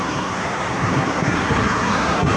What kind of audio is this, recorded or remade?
remade